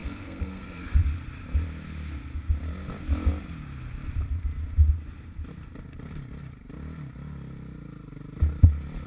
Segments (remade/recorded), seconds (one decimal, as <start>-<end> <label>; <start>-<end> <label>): 0.0-1.0 remade; 1.0-9.1 recorded